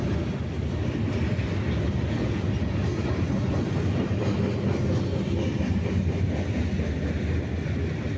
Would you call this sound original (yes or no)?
yes